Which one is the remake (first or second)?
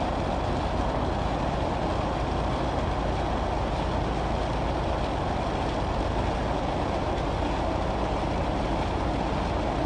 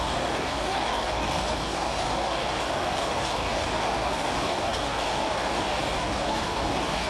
second